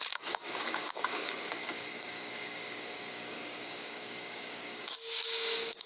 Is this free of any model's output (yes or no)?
no